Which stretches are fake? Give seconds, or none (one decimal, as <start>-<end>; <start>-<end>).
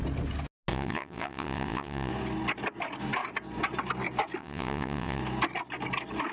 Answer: 0.7-2.1; 4.4-5.2